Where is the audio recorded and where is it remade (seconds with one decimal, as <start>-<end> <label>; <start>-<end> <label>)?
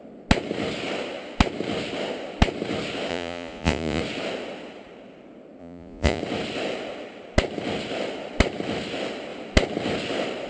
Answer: 0.0-3.1 recorded; 3.1-4.0 remade; 4.0-5.6 recorded; 5.6-6.2 remade; 6.2-10.5 recorded